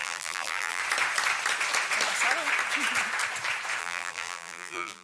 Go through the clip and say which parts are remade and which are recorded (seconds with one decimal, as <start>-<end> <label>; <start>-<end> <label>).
0.0-0.8 remade; 0.8-3.8 recorded; 3.8-5.0 remade